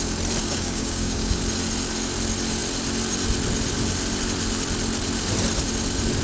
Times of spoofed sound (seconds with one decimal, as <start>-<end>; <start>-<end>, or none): 0.4-1.4